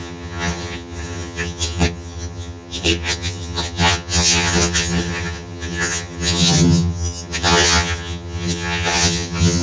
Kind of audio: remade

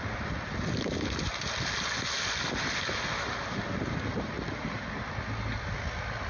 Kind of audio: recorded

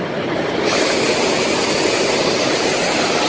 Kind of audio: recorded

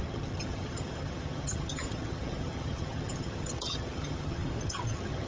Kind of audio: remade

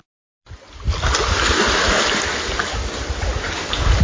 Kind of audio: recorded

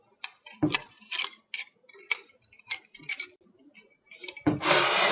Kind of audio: recorded